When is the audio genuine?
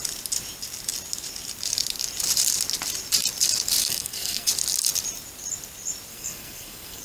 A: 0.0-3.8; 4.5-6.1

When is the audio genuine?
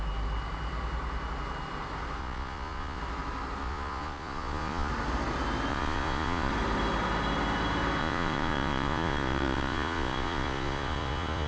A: 0.0-2.2; 3.0-3.6; 4.9-5.7; 6.5-8.0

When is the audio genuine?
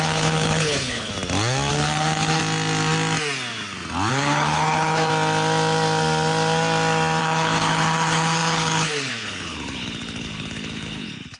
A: 1.1-1.7; 2.4-4.1; 5.1-7.2